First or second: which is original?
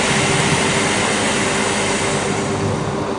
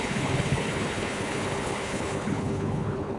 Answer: first